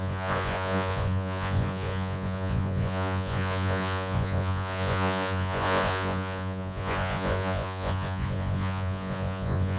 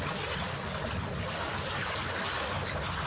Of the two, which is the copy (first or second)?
first